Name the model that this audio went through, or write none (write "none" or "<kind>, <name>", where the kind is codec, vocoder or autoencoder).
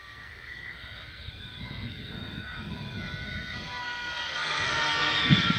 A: codec, SNAC